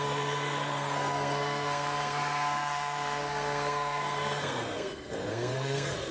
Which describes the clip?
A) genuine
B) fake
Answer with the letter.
B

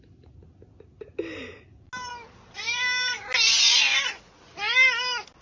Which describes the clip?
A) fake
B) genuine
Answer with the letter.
B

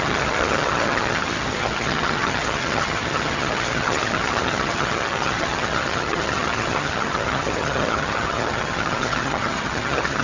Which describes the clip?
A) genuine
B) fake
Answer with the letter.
B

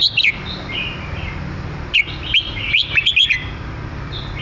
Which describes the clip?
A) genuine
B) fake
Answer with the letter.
B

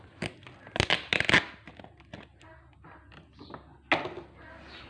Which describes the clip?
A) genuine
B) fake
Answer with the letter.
A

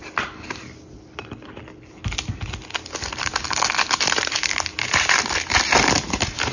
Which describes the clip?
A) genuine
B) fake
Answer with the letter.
A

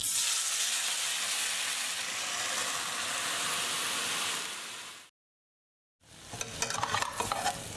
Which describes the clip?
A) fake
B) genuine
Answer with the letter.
B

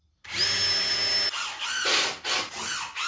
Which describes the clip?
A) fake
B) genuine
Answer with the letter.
B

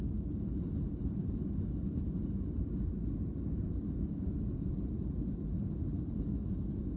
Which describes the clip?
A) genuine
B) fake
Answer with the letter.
A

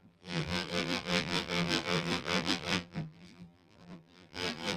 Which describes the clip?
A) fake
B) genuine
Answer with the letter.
A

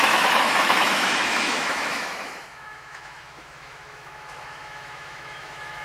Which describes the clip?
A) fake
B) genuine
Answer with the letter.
A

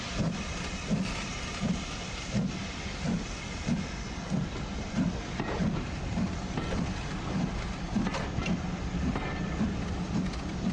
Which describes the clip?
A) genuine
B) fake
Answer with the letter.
B